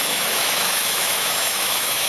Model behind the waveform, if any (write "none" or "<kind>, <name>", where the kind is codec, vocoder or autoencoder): autoencoder, DAC-VAE